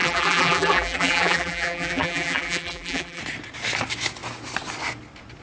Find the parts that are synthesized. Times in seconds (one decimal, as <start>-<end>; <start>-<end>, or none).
0.0-3.2